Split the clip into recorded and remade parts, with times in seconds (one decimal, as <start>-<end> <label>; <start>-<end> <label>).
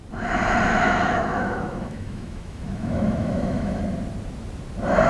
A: 0.0-0.7 recorded; 0.7-3.8 remade; 3.8-5.1 recorded